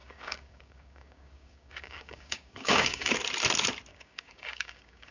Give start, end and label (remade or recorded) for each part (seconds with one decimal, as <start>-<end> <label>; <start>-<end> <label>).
0.0-3.1 remade; 3.1-3.9 recorded; 3.9-5.1 remade